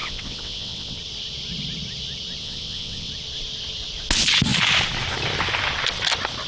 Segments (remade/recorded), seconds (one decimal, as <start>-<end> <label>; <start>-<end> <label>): 0.0-1.0 remade; 1.0-2.4 recorded; 2.4-3.1 remade; 3.1-6.5 recorded